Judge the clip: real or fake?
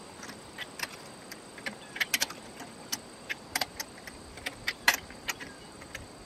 fake